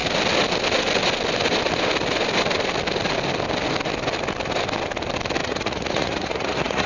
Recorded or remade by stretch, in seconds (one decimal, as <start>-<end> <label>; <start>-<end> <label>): 0.0-5.4 recorded; 5.4-6.9 remade